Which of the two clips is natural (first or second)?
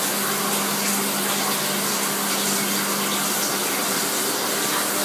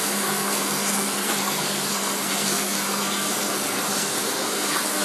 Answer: first